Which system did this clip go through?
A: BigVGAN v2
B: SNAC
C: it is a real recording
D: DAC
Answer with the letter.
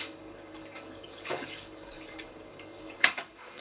D